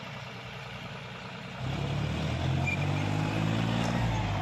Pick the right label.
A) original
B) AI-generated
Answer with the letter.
A